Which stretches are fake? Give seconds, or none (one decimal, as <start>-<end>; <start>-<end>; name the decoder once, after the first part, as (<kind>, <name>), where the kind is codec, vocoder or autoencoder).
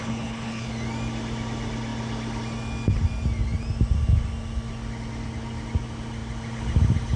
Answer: 0.0-0.7 (codec, HILCodec)